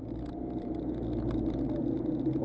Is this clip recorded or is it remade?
recorded